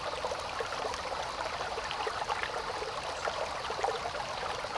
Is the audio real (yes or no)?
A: yes